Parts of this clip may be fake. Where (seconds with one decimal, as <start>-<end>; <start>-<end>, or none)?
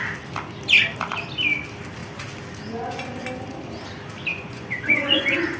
4.3-5.6